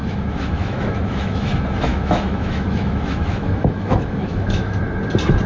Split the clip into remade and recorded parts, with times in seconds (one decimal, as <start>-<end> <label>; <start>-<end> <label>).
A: 0.0-1.5 remade; 1.5-1.9 recorded; 1.9-4.8 remade; 4.8-5.5 recorded